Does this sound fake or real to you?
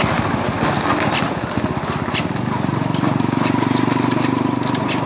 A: real